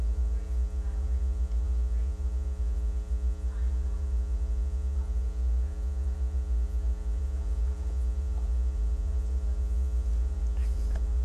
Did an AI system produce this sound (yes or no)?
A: yes